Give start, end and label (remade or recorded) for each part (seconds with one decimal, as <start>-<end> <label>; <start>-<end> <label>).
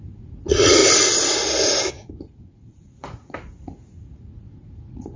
0.0-0.8 remade; 0.8-1.9 recorded; 1.9-5.2 remade